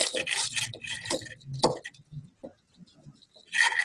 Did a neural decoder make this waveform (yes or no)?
no